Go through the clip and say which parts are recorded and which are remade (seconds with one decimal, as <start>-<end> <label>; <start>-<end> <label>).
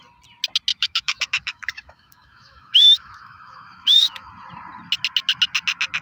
0.0-0.7 recorded; 0.7-4.3 remade; 4.3-6.0 recorded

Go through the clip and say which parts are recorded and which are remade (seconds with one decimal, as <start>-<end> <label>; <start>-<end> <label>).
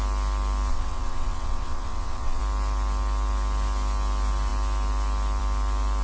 0.0-0.7 recorded; 0.7-2.4 remade; 2.4-6.0 recorded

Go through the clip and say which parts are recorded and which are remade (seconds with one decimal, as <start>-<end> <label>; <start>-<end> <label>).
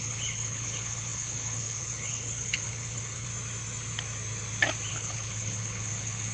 0.0-3.3 remade; 3.3-4.9 recorded; 4.9-6.3 remade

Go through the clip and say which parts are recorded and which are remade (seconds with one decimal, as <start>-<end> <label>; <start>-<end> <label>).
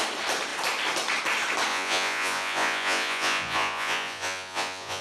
0.0-1.7 recorded; 1.7-5.0 remade